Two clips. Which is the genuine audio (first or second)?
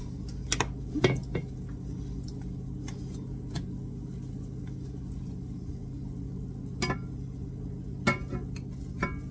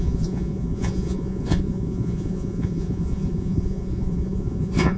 first